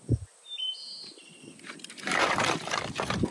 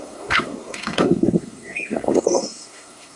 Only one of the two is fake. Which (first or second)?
second